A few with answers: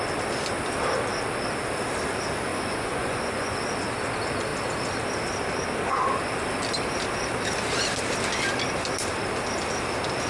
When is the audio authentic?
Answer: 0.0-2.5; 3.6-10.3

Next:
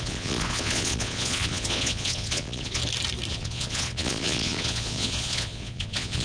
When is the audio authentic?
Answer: 2.8-3.3

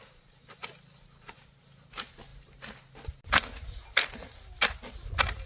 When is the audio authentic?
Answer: 0.0-5.5

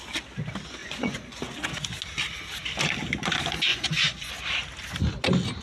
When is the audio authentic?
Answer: 0.0-0.8; 1.4-3.7; 4.3-5.6

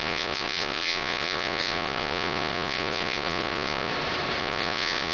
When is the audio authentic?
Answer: 3.9-4.4

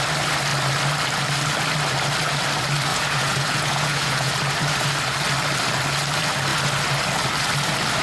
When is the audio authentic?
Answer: 0.0-2.9; 4.3-8.0

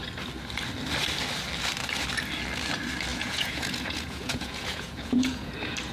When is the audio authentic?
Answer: 0.0-3.1; 5.5-5.9